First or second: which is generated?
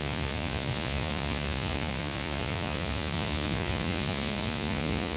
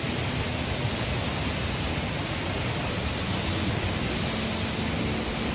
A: first